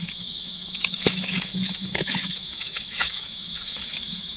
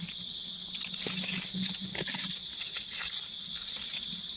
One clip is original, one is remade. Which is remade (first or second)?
first